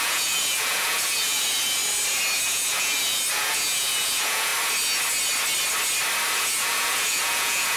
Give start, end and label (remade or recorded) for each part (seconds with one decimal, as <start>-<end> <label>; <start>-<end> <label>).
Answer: 0.0-1.8 remade; 1.8-2.4 recorded; 2.4-4.5 remade; 4.5-6.3 recorded; 6.3-7.8 remade